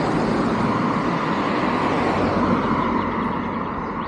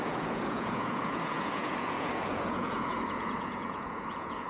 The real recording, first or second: first